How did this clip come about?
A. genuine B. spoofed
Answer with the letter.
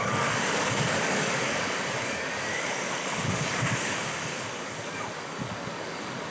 B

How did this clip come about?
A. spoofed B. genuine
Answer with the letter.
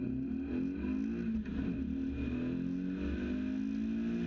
B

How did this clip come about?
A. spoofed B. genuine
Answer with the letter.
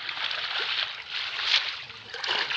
B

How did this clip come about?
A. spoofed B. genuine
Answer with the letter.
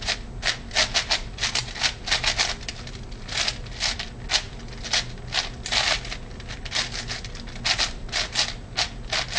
B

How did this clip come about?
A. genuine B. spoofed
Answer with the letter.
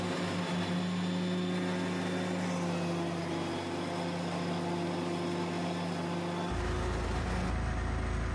A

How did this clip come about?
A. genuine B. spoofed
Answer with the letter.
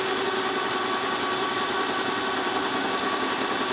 A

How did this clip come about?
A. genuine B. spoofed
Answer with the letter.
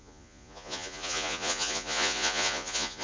B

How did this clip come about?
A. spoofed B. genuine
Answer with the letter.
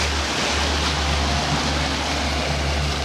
B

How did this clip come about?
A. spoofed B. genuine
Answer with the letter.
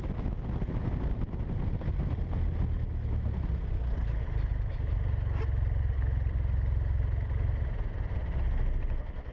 B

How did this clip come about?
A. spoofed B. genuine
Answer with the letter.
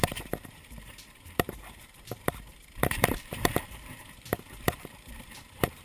A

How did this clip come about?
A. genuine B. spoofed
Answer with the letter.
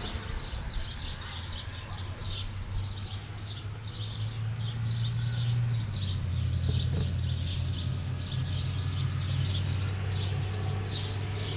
A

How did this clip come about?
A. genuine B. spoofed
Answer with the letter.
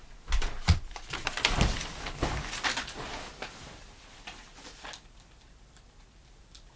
A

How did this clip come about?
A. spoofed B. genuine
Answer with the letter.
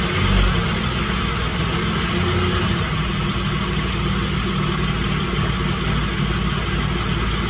B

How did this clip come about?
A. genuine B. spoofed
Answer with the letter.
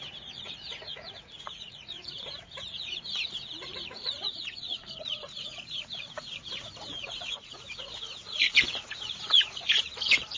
B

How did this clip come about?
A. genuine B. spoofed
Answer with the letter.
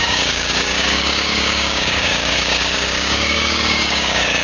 B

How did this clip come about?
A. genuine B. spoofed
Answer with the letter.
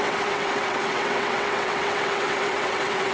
B